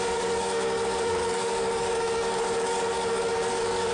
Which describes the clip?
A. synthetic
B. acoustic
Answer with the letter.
A